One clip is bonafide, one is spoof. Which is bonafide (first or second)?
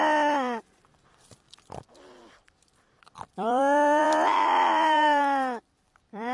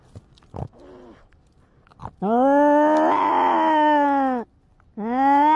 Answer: second